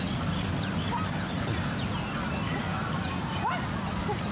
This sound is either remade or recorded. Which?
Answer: remade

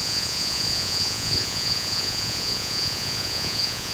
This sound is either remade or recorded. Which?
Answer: remade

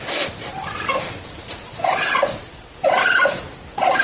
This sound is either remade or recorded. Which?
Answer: recorded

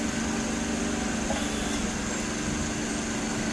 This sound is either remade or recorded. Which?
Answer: recorded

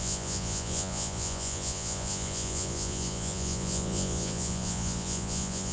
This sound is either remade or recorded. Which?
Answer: remade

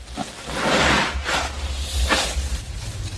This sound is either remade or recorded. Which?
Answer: recorded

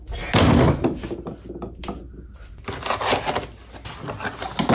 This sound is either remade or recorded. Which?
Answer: recorded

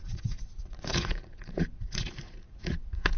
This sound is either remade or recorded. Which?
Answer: remade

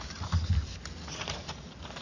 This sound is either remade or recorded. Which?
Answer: recorded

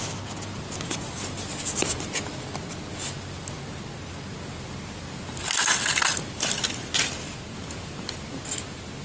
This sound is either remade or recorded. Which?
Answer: recorded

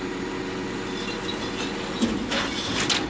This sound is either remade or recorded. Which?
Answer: recorded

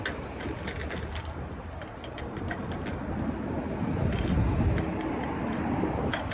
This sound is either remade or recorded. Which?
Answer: recorded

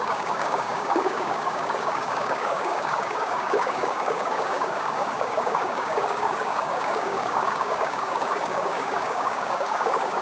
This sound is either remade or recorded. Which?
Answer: remade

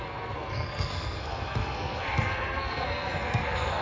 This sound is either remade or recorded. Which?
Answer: remade